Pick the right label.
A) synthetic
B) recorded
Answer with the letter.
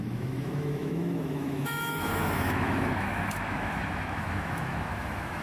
A